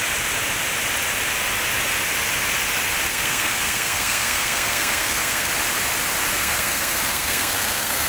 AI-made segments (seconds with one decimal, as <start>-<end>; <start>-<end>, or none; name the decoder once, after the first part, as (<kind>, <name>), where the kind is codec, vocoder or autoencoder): 3.1-5.5 (codec, SNAC); 6.3-8.1